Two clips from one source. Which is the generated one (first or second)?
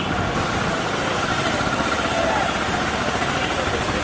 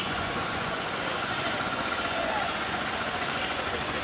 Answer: second